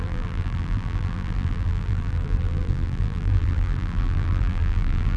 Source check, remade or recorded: remade